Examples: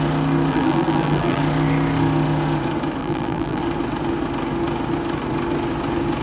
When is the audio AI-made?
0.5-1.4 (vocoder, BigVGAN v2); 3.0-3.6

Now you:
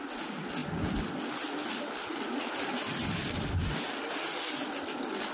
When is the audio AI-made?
none

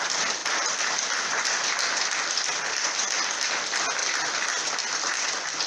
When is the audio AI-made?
none

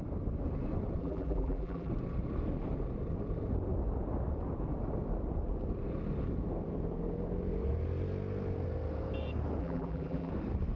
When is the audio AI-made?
1.0-1.9 (vocoder, BigVGAN v2); 9.6-10.3

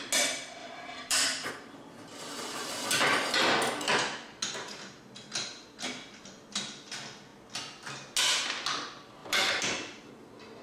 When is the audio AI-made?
0.6-1.5 (vocoder, BigVGAN v2); 9.2-10.1